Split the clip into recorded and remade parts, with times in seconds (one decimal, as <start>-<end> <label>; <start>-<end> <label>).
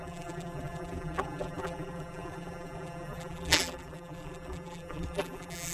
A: 0.0-5.7 remade